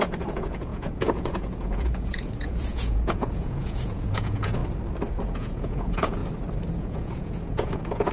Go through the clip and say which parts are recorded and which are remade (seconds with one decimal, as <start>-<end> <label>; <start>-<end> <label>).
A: 0.0-4.6 remade; 4.6-5.1 recorded; 5.1-6.2 remade; 6.2-6.8 recorded; 6.8-8.1 remade